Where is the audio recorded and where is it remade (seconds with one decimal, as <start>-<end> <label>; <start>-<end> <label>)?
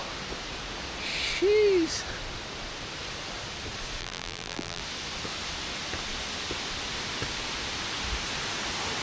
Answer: 0.0-4.0 recorded; 4.0-4.8 remade; 4.8-9.0 recorded